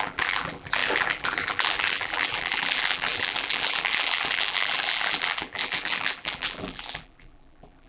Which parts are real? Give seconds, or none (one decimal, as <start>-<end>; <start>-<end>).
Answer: none